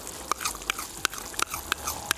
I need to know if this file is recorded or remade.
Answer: recorded